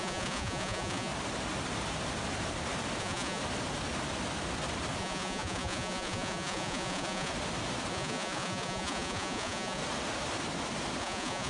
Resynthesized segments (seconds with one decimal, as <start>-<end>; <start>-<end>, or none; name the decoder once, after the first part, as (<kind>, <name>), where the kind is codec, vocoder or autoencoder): 0.0-1.1 (vocoder, Vocos); 3.0-3.4; 5.0-7.3; 7.9-9.8; 11.0-11.5

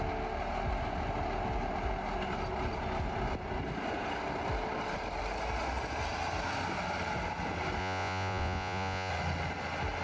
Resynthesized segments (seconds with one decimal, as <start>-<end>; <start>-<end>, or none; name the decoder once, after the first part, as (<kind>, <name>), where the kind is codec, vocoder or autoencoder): 7.8-9.1 (vocoder, Vocos)